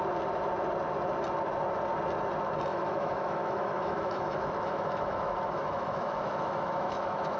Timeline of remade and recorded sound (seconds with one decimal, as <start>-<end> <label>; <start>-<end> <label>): 0.0-2.7 recorded; 2.7-7.4 remade